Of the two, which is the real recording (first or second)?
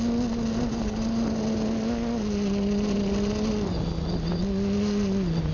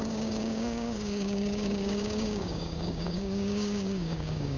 first